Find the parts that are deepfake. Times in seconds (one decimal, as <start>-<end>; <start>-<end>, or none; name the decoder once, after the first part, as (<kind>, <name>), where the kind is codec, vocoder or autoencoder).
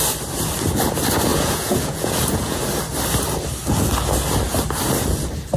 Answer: 1.3-2.6 (vocoder, Vocos)